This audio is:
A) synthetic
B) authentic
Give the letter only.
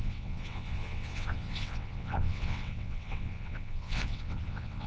A